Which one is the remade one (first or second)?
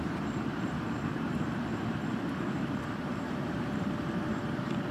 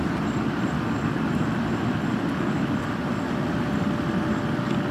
first